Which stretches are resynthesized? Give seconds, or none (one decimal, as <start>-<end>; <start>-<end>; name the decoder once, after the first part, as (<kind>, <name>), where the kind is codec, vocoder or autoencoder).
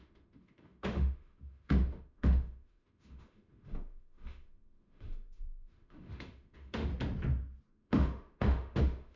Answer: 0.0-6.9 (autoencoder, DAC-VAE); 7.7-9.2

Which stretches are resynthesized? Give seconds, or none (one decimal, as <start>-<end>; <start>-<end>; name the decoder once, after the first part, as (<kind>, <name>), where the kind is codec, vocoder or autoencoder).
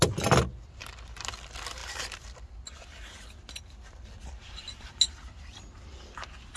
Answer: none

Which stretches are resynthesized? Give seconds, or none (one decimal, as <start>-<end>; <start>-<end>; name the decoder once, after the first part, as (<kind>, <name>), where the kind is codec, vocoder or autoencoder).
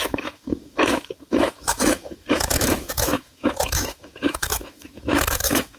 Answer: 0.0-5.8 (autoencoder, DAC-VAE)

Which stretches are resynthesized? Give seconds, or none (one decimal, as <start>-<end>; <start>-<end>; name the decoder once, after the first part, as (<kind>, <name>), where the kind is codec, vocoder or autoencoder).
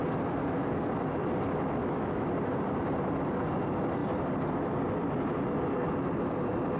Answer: 1.8-2.3 (autoencoder, DAC-VAE)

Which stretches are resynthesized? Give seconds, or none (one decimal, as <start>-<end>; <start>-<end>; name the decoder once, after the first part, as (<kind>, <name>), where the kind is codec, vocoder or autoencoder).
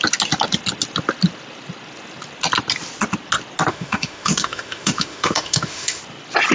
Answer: 3.7-6.0 (autoencoder, DAC-VAE)